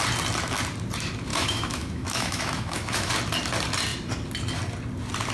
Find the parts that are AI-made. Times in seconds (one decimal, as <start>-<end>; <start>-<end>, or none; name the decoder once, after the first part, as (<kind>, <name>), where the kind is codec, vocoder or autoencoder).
1.3-3.1 (autoencoder, DAC-VAE)